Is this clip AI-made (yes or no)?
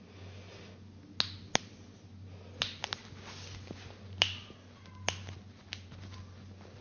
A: no